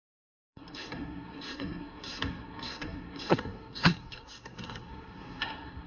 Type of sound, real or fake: fake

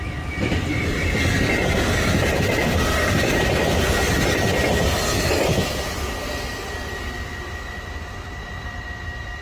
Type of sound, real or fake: real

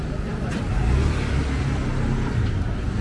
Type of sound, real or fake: real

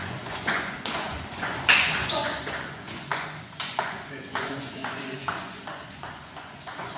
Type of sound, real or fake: fake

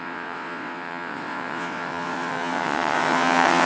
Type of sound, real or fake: fake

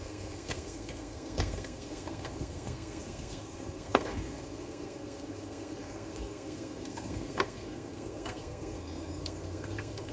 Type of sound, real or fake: fake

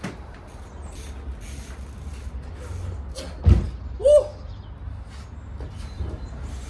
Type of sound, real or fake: real